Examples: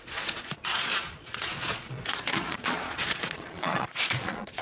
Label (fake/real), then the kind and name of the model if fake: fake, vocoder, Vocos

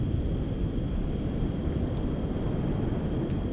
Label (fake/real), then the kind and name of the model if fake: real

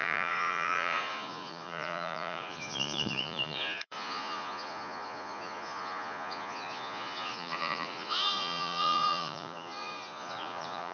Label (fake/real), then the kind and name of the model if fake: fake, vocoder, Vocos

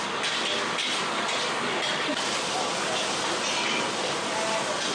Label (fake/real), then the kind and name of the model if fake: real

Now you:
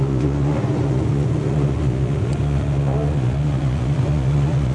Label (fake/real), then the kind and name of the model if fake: fake, vocoder, Vocos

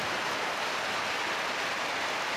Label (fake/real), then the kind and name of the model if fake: real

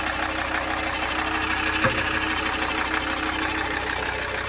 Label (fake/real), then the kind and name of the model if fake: real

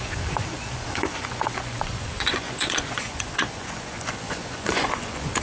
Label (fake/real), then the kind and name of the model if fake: fake, vocoder, Vocos